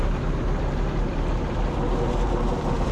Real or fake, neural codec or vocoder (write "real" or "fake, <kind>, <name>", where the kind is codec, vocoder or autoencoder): real